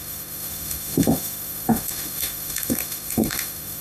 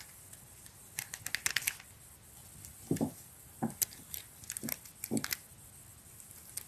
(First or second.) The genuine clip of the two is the second